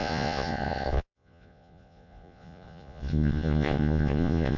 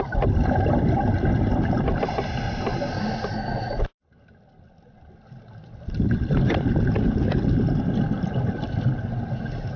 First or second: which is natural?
second